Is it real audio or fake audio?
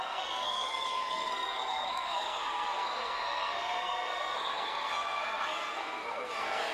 fake